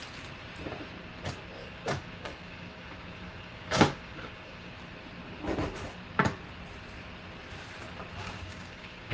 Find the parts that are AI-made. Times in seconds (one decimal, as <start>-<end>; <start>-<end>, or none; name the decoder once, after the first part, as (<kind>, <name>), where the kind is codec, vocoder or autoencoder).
1.6-4.7 (codec, DAC); 8.2-9.1

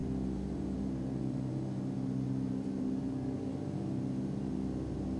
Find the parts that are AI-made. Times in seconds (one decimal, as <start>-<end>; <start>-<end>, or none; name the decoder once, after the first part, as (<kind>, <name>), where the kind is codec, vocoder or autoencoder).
3.1-3.5 (codec, DAC)

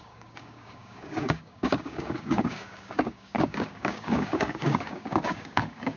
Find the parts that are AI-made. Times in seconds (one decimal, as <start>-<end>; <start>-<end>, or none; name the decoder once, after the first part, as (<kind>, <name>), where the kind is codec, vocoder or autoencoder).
0.0-6.0 (codec, DAC)

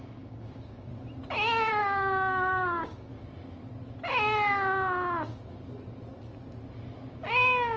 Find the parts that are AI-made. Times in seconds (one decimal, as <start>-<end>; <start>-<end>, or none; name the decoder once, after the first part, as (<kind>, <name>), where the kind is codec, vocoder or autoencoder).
0.0-0.9 (codec, DAC); 1.7-3.1; 7.3-7.8

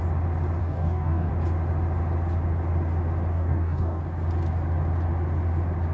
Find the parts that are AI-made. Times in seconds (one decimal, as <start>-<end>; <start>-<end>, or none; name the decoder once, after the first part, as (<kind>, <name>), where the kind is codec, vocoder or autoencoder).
0.6-1.3 (codec, DAC); 3.3-4.0

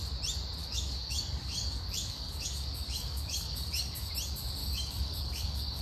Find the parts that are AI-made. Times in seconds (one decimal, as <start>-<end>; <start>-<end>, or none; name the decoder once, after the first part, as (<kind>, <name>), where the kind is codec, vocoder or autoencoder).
0.6-4.1 (codec, DAC); 4.6-5.8

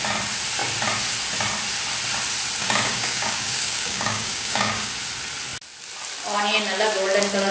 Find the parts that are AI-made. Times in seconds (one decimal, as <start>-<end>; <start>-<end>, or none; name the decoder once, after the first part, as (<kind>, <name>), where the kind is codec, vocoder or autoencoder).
2.6-4.9 (codec, DAC)

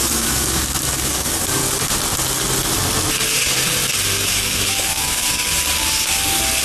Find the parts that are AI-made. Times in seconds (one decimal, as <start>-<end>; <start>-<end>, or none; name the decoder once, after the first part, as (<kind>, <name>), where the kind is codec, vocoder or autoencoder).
0.0-1.6 (codec, DAC); 4.3-5.5